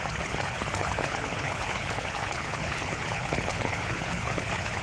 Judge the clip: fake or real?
fake